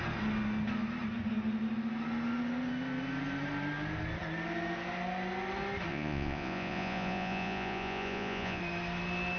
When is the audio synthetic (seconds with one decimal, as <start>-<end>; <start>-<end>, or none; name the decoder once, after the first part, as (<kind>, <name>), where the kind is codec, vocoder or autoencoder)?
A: 5.9-8.6 (vocoder, Vocos)